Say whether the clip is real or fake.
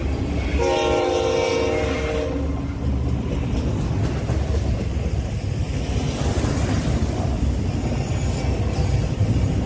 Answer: real